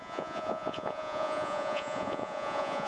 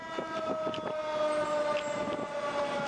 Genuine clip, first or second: second